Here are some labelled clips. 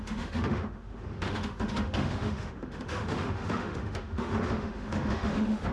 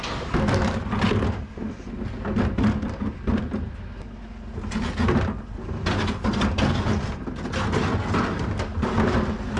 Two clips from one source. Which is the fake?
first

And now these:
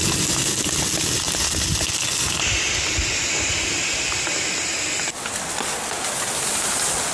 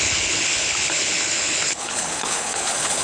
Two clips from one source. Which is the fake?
second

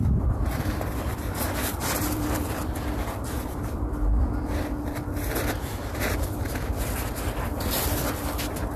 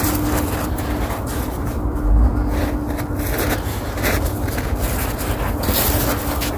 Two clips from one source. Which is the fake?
first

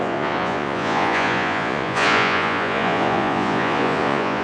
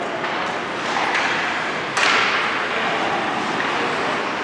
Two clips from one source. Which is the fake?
first